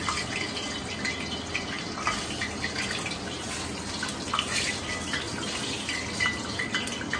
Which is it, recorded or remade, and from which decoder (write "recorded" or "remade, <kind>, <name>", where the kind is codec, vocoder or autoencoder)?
recorded